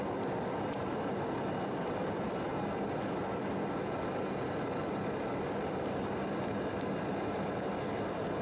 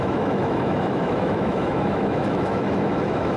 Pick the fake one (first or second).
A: second